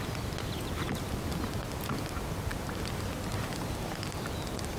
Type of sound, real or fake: real